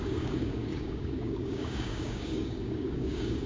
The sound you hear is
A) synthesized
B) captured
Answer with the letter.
A